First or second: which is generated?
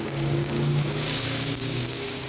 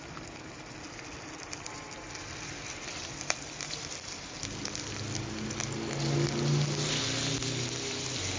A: first